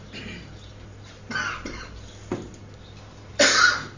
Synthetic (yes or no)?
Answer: no